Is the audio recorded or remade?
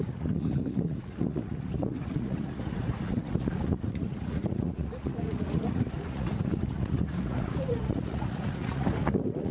remade